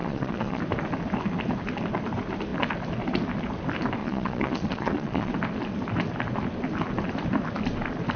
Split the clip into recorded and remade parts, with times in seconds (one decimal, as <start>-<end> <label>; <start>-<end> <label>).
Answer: 0.0-0.6 remade; 0.6-4.0 recorded; 4.0-5.3 remade; 5.3-8.2 recorded